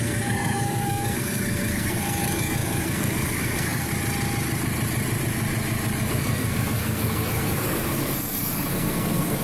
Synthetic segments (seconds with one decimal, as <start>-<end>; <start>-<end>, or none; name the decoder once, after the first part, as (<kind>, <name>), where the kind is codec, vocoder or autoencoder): 0.0-3.9 (codec, SNAC); 6.1-9.4